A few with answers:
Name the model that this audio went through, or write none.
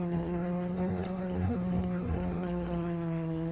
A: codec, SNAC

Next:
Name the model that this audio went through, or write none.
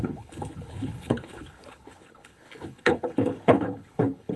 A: codec, HILCodec